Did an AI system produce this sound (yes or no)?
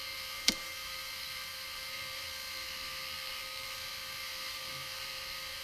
yes